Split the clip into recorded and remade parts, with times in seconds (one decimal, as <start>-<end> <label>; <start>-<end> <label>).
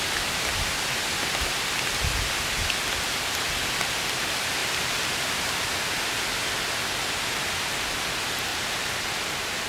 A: 0.0-4.6 recorded; 4.6-5.2 remade; 5.2-8.5 recorded; 8.5-9.1 remade; 9.1-9.7 recorded